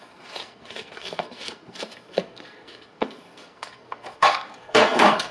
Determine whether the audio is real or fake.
fake